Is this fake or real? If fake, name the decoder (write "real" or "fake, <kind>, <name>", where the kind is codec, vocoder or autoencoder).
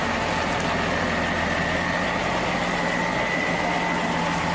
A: real